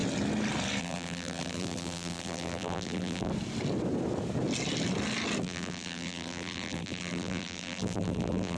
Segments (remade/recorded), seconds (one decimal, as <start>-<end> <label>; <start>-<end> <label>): 0.0-0.8 recorded; 0.8-3.3 remade; 3.3-5.4 recorded; 5.4-8.6 remade